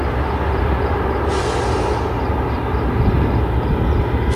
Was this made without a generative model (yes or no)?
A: yes